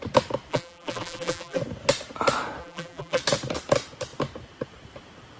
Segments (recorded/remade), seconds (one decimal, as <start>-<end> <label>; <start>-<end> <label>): 0.0-0.5 recorded; 0.5-1.6 remade; 1.6-2.6 recorded; 2.6-3.2 remade; 3.2-5.4 recorded